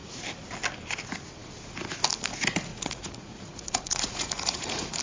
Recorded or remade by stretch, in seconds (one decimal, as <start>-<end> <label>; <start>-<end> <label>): 0.0-2.7 recorded; 2.7-5.0 remade